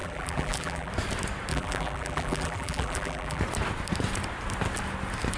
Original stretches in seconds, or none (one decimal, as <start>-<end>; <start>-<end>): 0.9-1.5; 3.4-5.4